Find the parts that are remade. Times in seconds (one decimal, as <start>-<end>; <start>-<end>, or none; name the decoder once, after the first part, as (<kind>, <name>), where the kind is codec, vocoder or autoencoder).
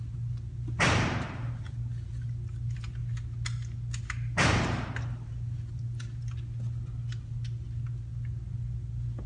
none